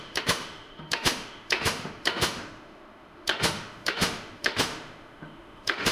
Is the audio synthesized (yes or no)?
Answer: yes